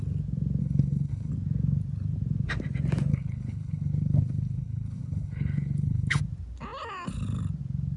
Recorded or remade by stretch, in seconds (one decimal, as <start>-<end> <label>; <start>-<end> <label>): 0.0-0.6 recorded; 0.6-1.3 remade; 1.3-3.1 recorded; 3.1-6.2 remade; 6.2-8.0 recorded